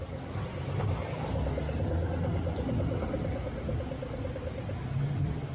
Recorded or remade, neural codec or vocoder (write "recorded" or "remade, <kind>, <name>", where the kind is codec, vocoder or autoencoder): recorded